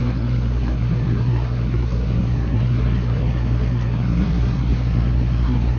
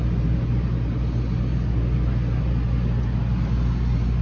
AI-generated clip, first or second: first